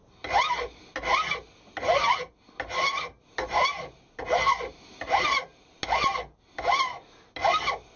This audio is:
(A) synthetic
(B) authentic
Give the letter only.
B